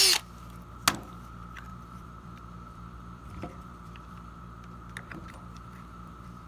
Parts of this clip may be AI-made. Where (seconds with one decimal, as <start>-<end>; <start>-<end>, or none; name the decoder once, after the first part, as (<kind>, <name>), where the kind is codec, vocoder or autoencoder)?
1.7-4.4 (vocoder, BigVGAN v2); 5.2-6.5